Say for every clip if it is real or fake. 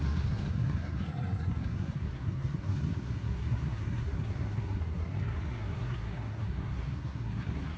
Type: fake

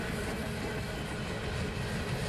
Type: real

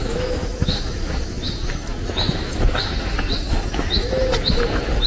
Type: fake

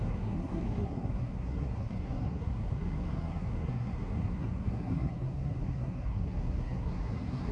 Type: fake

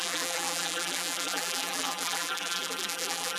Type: fake